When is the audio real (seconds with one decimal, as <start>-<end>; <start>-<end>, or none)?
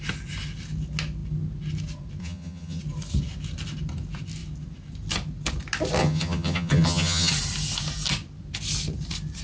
0.0-2.2; 2.8-6.0; 7.3-9.4